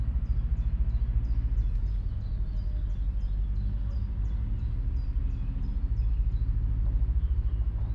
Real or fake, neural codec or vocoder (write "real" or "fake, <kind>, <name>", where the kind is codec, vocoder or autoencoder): real